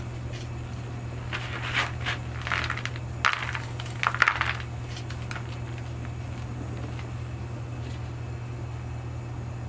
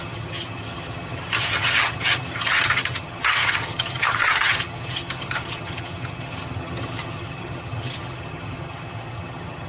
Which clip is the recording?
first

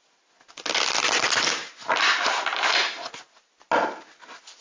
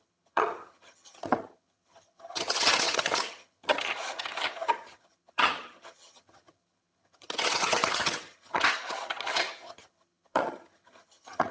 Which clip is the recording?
first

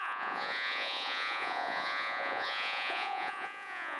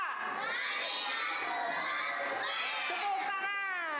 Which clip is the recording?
second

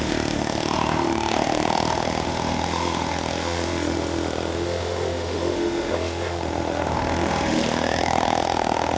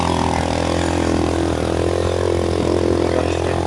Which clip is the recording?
second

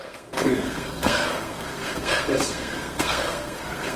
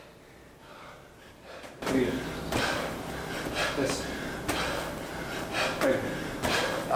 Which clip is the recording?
second